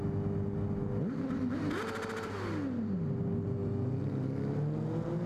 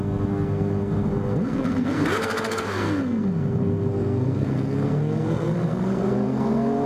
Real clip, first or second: first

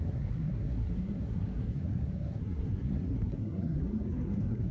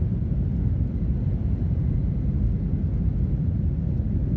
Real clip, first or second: second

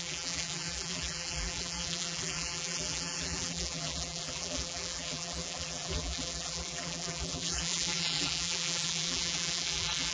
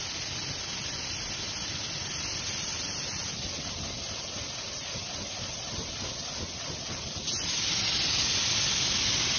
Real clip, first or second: second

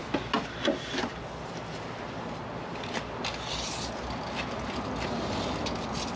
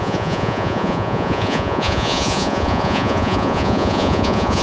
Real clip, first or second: first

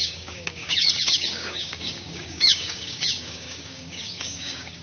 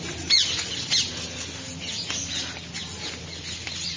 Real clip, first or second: second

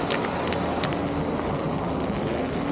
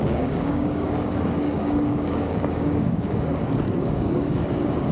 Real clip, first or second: first